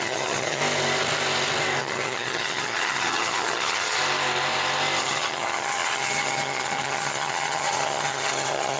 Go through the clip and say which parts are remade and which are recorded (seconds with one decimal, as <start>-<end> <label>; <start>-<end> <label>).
0.0-0.6 remade; 0.6-1.8 recorded; 1.8-4.0 remade; 4.0-5.0 recorded; 5.0-8.8 remade